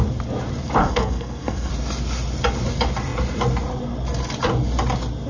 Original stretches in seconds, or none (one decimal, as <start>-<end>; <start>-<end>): 0.0-0.8; 1.7-5.3